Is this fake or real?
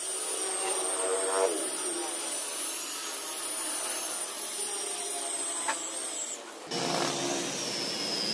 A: real